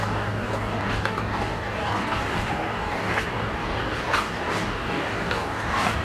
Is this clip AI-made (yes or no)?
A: yes